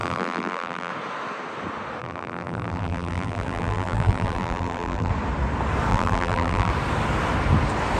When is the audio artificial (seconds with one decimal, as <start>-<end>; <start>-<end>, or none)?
0.0-0.9; 2.0-5.1; 5.9-6.7